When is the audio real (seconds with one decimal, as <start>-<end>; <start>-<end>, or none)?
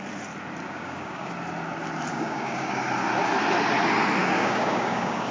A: 0.0-0.6; 1.3-2.1; 2.8-4.2